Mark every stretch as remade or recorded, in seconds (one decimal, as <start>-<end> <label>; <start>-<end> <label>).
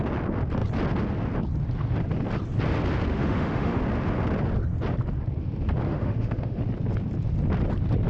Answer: 0.0-3.1 recorded; 3.1-3.8 remade; 3.8-5.9 recorded; 5.9-6.6 remade; 6.6-8.1 recorded